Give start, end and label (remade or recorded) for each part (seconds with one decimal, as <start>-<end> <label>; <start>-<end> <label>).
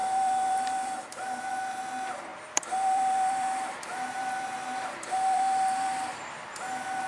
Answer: 0.0-1.5 remade; 1.5-2.3 recorded; 2.3-6.6 remade; 6.6-7.1 recorded